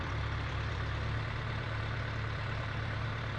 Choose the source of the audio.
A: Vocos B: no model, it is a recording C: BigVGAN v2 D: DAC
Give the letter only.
C